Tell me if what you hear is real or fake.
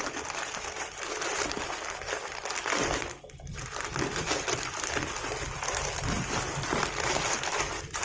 real